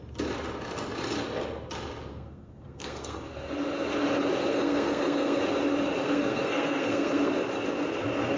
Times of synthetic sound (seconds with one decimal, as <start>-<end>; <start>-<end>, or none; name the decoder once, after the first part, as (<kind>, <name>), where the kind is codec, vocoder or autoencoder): 2.1-3.2 (codec, SNAC); 4.5-5.4; 6.0-7.3